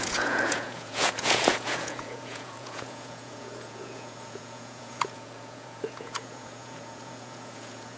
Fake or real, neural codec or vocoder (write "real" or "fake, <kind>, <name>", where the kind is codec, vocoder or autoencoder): fake, vocoder, Vocos